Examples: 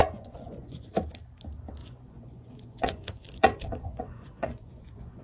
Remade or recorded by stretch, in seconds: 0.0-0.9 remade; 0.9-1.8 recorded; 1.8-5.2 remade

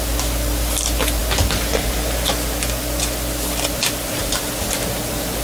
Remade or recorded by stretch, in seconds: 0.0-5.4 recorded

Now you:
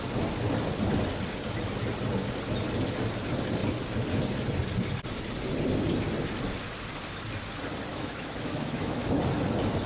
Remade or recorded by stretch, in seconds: 0.0-7.9 recorded; 7.9-9.2 remade; 9.2-9.9 recorded